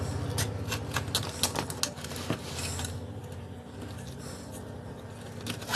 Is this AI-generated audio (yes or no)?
no